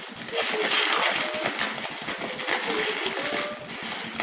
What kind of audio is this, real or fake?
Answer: real